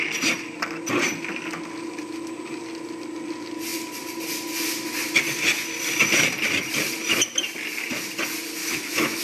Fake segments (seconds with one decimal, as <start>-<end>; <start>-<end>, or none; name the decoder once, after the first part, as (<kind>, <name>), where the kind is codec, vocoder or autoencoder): 8.6-9.2 (autoencoder, DAC-VAE)